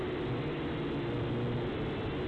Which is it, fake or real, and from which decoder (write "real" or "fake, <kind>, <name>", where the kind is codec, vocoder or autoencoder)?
real